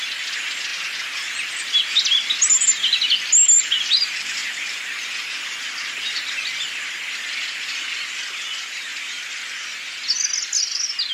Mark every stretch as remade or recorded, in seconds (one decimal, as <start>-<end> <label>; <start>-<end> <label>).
0.0-11.1 recorded